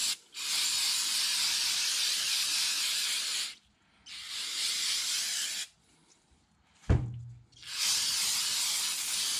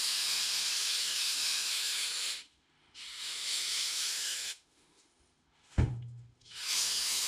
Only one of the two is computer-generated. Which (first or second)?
second